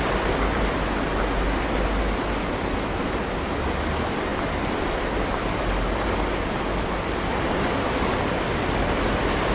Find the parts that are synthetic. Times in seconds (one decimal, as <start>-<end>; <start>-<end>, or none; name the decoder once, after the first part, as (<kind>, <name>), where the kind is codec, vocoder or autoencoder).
none